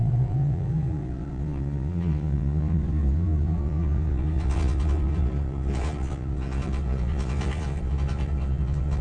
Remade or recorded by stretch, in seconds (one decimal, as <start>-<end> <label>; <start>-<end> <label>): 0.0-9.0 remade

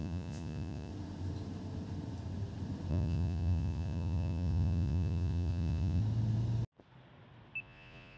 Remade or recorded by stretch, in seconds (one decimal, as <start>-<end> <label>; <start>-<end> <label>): 0.0-0.9 remade; 0.9-2.9 recorded; 2.9-6.0 remade; 6.0-7.6 recorded; 7.6-8.2 remade

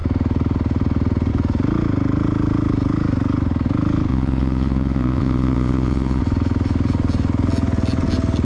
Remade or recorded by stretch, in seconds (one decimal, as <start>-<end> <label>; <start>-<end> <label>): 0.0-4.1 recorded; 4.1-6.2 remade; 6.2-8.4 recorded

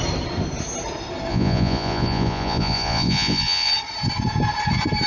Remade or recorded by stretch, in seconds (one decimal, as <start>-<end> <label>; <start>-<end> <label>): 0.0-1.3 recorded; 1.3-3.7 remade; 3.7-5.1 recorded

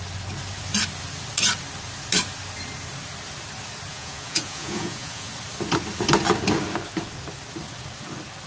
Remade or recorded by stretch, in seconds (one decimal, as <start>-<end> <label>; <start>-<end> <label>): 0.0-3.9 recorded; 3.9-5.3 remade; 5.3-8.5 recorded